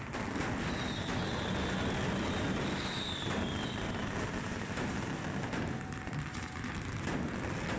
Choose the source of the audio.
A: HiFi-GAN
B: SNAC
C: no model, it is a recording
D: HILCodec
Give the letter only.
C